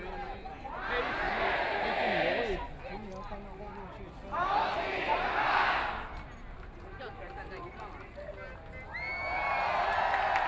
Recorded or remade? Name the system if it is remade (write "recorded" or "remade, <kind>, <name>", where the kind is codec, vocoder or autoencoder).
recorded